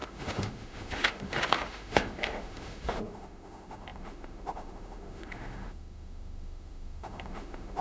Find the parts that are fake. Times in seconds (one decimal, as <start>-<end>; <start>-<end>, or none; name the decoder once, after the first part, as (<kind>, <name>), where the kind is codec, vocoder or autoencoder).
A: 0.0-7.8 (autoencoder, DAC-VAE)